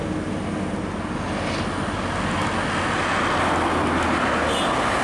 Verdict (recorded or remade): recorded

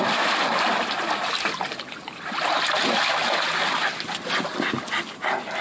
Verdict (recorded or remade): recorded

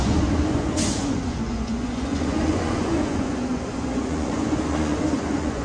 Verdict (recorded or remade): remade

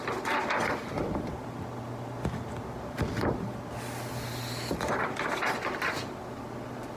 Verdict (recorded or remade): recorded